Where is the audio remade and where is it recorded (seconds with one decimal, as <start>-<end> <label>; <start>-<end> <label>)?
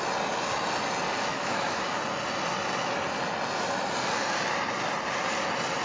0.0-1.3 recorded; 1.3-2.0 remade; 2.0-5.8 recorded